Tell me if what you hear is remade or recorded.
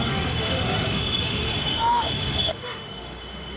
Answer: remade